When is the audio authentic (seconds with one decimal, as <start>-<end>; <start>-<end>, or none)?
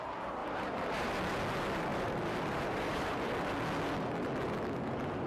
0.0-0.4; 1.1-1.9; 3.3-5.3